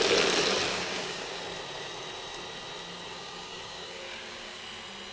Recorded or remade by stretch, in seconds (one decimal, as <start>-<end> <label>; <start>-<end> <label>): 0.0-0.7 recorded; 0.7-1.4 remade; 1.4-3.1 recorded; 3.1-4.6 remade; 4.6-5.1 recorded